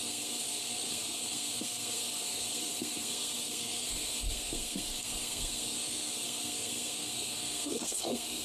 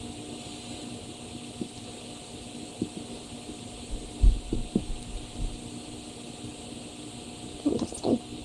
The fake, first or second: first